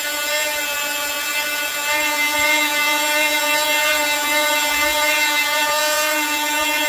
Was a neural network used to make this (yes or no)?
yes